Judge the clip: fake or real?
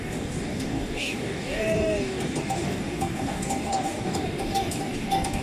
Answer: fake